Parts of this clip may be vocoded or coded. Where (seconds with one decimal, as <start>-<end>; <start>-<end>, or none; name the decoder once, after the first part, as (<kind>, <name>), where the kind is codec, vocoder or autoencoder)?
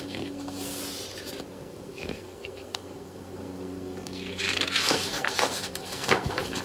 0.0-0.8 (codec, SNAC); 1.4-6.6